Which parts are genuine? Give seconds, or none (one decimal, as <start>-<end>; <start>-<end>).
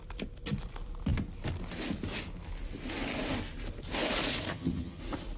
0.0-4.5; 5.0-5.4